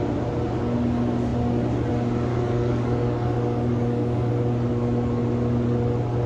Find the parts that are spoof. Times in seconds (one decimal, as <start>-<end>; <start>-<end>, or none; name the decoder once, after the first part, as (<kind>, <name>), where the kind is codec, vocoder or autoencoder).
2.3-4.3 (codec, DAC); 4.7-5.2

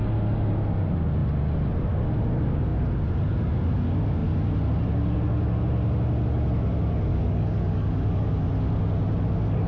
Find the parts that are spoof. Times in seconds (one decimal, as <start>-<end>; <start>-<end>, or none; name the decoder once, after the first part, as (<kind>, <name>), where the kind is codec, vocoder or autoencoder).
7.1-8.3 (codec, DAC)

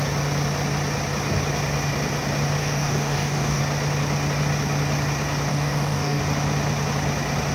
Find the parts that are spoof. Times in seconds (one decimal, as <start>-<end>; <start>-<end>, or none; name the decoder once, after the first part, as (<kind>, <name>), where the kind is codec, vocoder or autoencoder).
2.6-3.6 (codec, DAC); 5.5-6.2

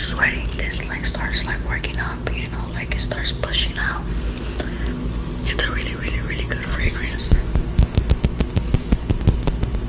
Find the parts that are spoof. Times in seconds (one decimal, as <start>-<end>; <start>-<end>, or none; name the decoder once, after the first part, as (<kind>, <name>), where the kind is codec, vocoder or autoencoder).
none

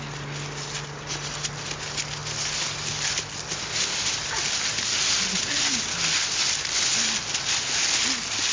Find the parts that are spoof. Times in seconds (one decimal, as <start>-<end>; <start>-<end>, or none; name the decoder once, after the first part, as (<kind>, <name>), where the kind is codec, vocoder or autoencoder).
none

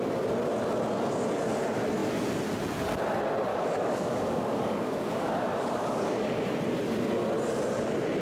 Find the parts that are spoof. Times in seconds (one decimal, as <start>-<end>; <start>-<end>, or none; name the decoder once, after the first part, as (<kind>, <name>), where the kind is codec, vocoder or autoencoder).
3.5-6.4 (codec, DAC)

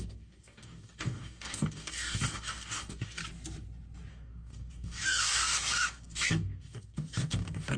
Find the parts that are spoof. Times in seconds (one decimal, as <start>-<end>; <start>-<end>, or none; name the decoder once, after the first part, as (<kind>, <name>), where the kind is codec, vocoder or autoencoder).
0.0-3.2 (codec, DAC); 4.1-7.8

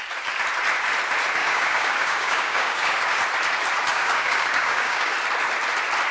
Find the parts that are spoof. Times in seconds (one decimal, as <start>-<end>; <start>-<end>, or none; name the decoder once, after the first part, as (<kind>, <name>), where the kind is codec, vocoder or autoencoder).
1.4-3.2 (codec, DAC); 3.9-5.1